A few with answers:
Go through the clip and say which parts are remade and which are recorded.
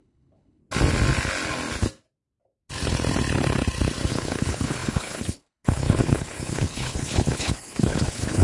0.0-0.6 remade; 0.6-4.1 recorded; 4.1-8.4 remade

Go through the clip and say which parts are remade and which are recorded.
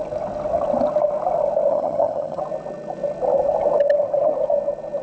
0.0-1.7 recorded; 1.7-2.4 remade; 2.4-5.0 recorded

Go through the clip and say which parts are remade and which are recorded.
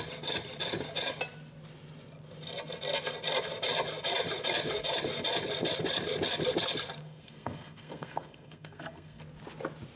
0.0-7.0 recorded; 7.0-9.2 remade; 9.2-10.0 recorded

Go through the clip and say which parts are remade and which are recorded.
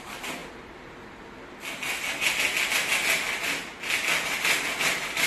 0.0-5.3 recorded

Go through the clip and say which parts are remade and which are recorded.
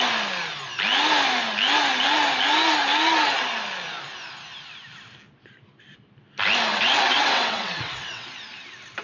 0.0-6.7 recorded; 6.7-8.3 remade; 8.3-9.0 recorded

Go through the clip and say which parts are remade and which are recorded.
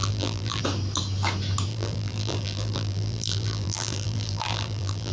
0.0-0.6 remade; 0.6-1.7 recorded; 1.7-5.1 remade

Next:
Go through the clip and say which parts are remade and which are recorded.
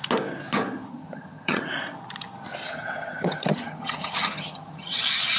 0.0-0.9 recorded; 0.9-1.7 remade; 1.7-2.6 recorded; 2.6-5.0 remade; 5.0-5.4 recorded